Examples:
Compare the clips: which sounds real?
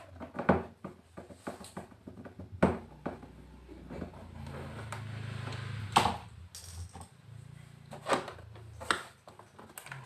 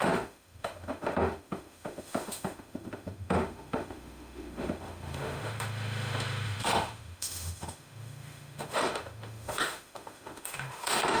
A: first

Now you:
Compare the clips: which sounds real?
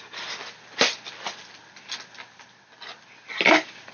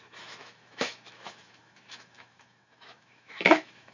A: first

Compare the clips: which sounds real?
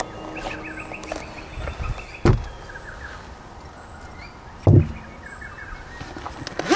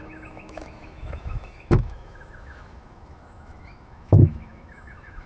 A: first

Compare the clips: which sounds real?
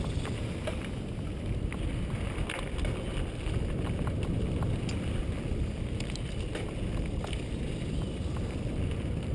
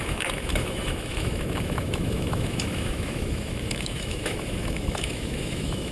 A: first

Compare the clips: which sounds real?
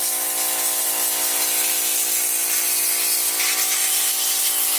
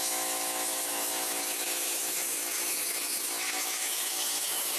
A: first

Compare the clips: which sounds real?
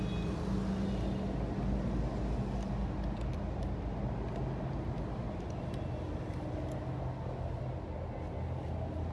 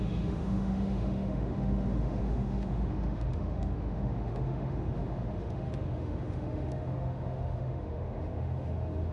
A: first